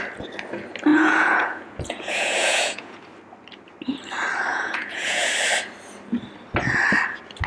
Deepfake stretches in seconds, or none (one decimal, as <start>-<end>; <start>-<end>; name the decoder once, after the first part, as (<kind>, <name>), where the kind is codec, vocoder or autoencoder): 0.9-3.0 (vocoder, Vocos); 4.5-5.3